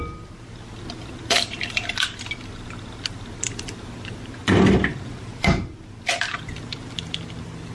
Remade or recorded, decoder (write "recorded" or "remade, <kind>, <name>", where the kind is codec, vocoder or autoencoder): remade, vocoder, BigVGAN v2